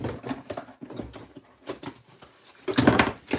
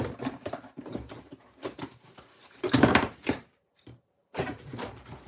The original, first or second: first